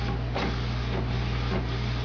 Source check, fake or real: real